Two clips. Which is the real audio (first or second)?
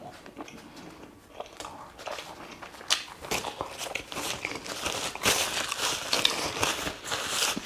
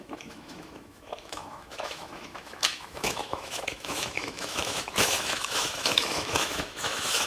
first